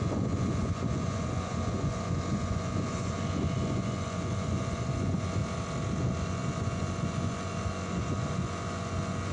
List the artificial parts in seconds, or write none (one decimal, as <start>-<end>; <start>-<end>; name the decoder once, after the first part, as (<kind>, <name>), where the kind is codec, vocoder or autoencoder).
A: 0.0-5.4 (vocoder, Vocos); 6.0-9.3